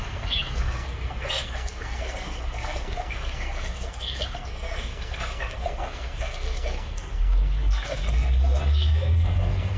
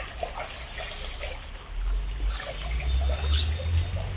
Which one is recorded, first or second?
second